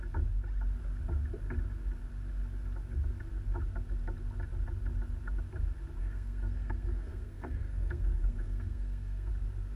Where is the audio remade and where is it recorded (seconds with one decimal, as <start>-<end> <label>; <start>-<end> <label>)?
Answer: 0.0-6.0 recorded; 6.0-9.3 remade; 9.3-9.8 recorded